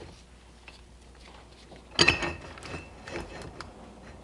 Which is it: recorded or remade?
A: recorded